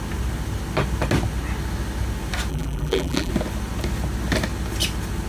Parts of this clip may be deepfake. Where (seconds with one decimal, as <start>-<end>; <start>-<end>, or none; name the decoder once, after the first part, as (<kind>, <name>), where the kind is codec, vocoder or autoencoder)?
2.5-3.3 (vocoder, BigVGAN v2)